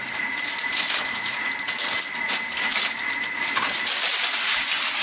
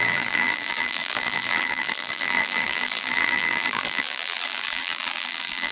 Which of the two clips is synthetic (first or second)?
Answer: second